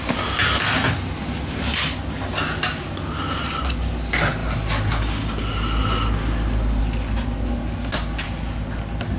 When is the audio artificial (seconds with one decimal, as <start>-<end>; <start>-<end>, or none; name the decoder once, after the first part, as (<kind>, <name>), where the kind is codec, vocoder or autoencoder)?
none